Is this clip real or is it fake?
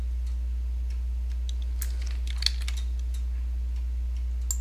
real